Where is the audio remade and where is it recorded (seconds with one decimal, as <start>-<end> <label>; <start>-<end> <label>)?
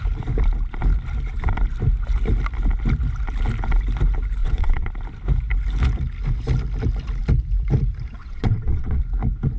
0.0-4.4 recorded; 4.4-4.9 remade; 4.9-8.2 recorded; 8.2-9.0 remade; 9.0-9.6 recorded